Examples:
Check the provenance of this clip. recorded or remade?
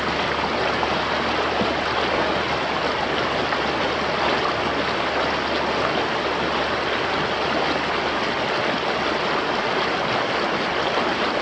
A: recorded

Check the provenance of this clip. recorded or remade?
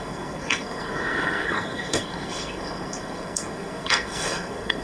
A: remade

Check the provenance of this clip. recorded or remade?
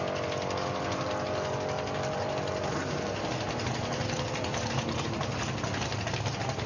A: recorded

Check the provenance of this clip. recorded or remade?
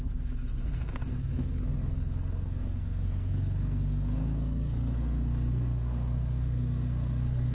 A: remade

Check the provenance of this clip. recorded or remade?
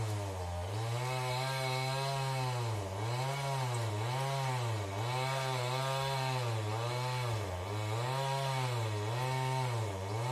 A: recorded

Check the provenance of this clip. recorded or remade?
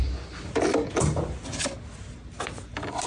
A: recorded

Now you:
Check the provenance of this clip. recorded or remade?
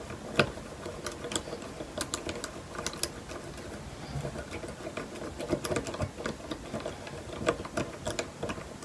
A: recorded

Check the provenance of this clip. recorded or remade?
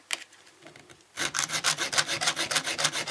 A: recorded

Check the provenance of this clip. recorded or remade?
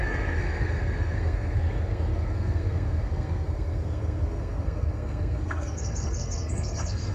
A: remade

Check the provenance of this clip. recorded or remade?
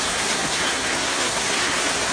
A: remade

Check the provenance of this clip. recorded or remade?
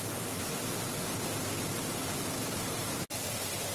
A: recorded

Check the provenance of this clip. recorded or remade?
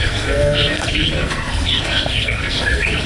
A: remade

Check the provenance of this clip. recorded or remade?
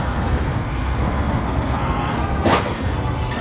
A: remade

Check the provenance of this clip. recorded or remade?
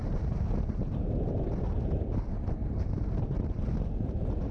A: recorded